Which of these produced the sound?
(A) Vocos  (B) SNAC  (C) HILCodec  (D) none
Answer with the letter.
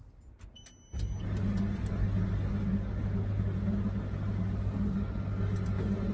D